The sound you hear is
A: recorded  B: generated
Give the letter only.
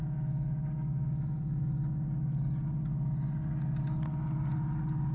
A